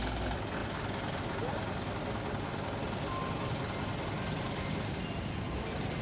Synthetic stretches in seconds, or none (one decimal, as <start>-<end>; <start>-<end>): none